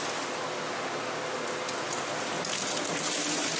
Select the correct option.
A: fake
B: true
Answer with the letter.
B